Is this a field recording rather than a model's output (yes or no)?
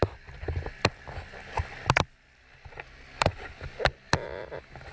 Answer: yes